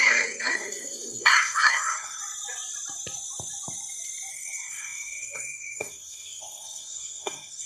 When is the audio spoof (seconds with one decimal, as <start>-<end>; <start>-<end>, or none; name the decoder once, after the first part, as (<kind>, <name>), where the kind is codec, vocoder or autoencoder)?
0.0-2.2 (codec, SNAC); 4.3-7.7